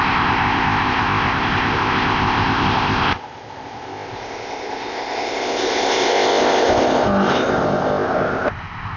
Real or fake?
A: fake